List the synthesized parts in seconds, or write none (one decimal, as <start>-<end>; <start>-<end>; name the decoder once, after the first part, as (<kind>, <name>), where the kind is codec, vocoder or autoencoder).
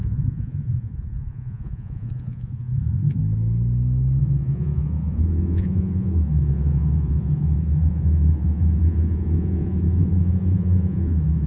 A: 0.0-3.2 (vocoder, Vocos); 4.2-11.5